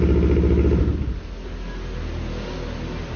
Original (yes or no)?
yes